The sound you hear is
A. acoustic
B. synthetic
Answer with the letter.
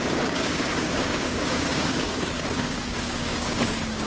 B